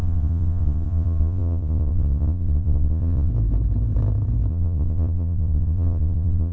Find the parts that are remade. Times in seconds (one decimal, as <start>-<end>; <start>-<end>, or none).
0.0-3.3; 4.5-6.5